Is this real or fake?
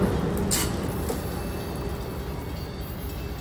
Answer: real